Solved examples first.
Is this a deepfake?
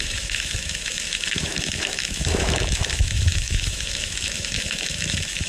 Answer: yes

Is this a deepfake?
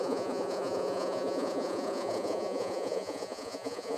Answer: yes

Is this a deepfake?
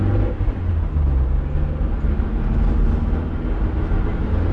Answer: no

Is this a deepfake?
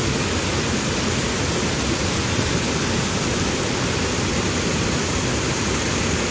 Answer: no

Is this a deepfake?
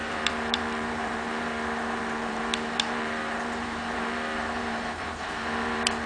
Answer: yes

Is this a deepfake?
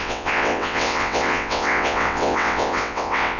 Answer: yes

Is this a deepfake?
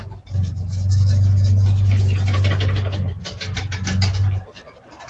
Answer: no